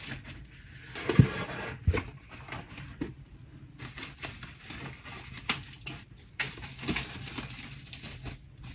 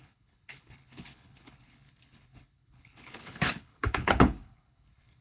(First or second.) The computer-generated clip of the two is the second